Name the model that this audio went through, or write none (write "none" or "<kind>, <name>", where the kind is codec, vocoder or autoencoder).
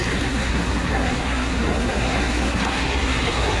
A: codec, SNAC